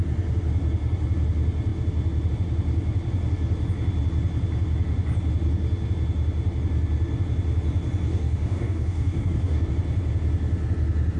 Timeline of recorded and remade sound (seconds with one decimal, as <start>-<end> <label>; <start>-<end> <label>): 0.0-8.1 recorded; 8.1-9.7 remade; 9.7-11.2 recorded